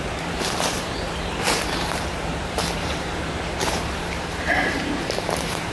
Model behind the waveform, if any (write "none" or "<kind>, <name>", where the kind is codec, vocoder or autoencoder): vocoder, BigVGAN v2